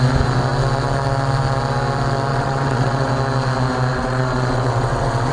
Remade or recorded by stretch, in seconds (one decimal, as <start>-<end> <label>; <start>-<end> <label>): 0.0-2.3 recorded; 2.3-3.1 remade; 3.1-3.9 recorded; 3.9-5.3 remade